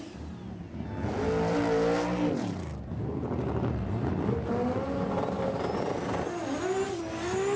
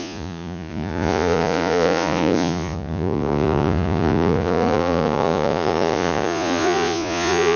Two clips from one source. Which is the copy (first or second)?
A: second